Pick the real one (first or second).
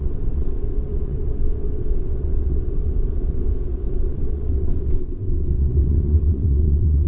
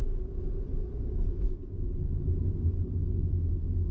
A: second